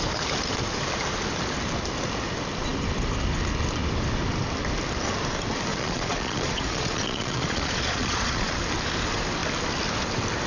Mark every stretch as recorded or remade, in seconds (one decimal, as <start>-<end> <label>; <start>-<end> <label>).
0.0-5.7 recorded; 5.7-8.6 remade; 8.6-10.5 recorded